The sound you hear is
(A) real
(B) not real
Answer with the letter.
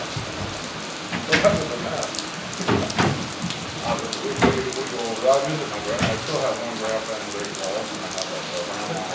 A